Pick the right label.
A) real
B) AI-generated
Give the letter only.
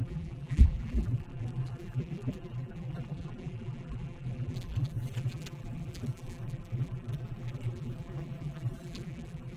B